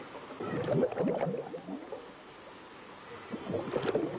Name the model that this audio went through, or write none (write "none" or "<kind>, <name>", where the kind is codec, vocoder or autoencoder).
none